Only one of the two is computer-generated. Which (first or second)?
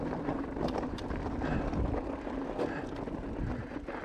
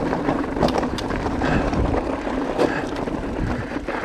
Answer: second